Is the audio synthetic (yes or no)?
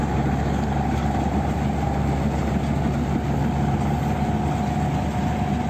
no